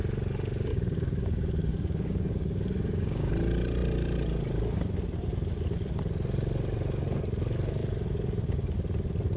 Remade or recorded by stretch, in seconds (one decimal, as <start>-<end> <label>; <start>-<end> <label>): 0.0-0.7 recorded; 0.7-3.3 remade; 3.3-9.4 recorded